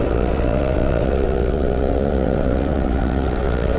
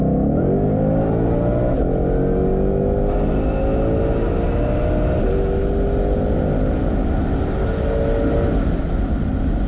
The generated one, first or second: first